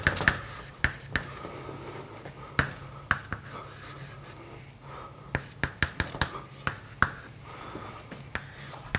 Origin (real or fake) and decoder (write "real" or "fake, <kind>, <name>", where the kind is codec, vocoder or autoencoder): real